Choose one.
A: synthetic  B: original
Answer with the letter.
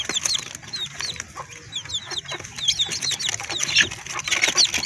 B